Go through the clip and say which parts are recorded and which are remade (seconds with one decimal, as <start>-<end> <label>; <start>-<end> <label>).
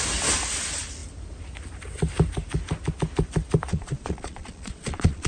0.0-3.7 recorded; 3.7-5.3 remade